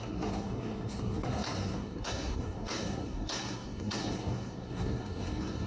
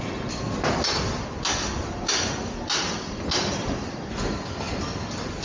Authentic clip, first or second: second